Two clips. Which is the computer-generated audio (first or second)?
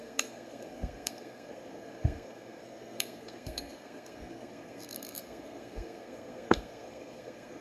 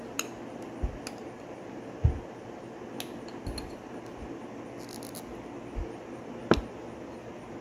first